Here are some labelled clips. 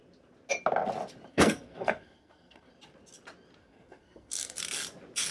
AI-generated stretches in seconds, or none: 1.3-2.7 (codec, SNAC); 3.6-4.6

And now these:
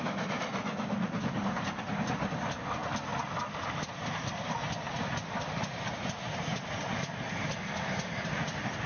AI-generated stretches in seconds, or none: none

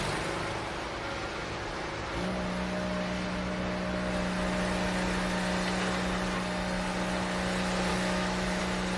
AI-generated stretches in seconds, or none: 7.9-8.6 (autoencoder, DAC-VAE)

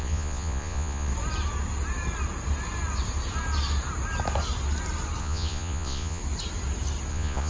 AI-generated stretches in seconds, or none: 0.0-1.1 (vocoder, Vocos); 5.2-6.2; 7.1-7.5

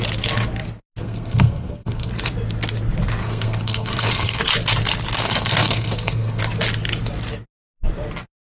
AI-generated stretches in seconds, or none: 1.0-2.1 (codec, SNAC); 3.2-4.4; 5.2-6.4

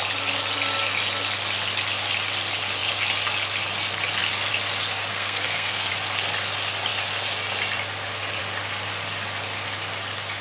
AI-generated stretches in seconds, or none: 5.1-5.9 (codec, SNAC)